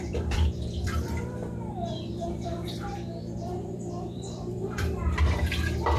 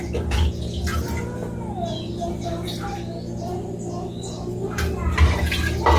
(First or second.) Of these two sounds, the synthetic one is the first